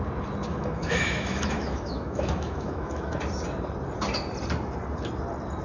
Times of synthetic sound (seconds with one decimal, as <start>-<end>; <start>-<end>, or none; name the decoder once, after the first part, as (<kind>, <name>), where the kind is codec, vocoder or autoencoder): 0.5-3.1 (autoencoder, DAC-VAE)